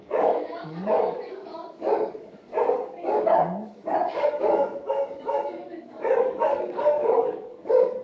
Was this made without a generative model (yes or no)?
no